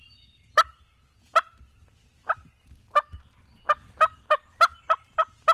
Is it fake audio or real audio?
real